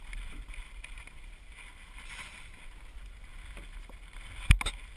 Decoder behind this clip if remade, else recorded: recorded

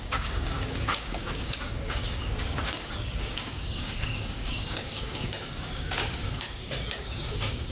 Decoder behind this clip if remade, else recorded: remade, codec, DAC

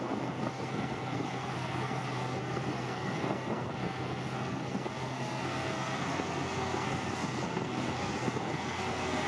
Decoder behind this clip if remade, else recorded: remade, codec, SNAC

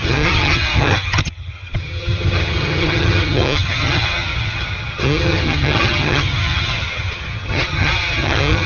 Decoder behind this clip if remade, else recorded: remade, vocoder, HiFi-GAN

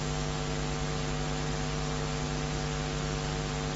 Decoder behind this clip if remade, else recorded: recorded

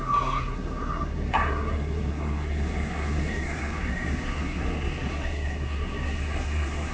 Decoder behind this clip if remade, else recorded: remade, codec, SNAC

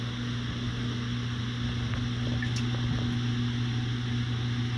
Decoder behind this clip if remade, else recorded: recorded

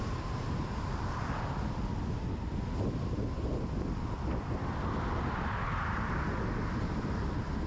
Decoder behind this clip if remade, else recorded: recorded